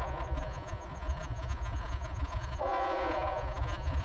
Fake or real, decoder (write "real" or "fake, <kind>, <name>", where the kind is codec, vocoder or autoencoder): fake, vocoder, Vocos